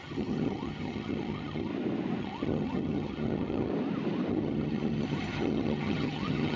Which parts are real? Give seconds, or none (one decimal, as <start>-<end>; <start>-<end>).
1.7-2.2; 3.7-4.3